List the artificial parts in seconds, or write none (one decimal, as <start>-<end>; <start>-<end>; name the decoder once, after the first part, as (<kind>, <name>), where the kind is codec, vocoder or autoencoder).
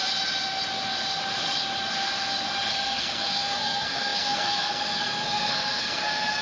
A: 2.7-6.4 (codec, SNAC)